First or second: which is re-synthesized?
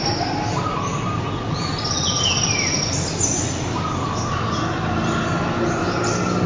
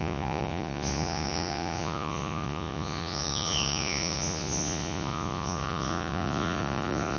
second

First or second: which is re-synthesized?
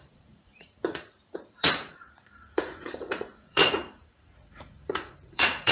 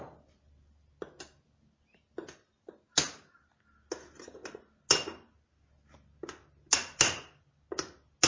first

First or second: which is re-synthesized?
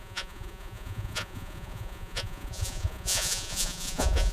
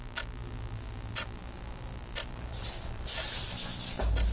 first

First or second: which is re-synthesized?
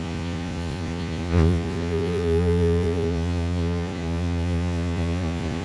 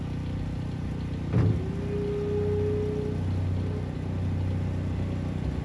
first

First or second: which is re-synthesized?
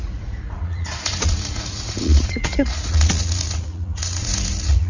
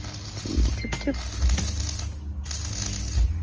first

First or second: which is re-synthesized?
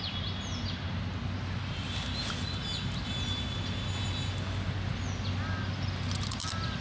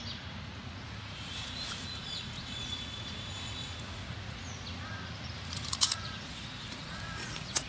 second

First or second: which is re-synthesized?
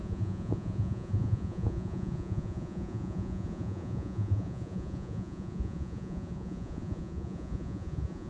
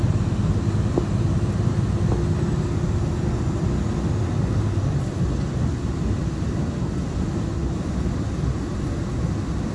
first